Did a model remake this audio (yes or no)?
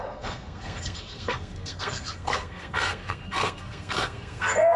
yes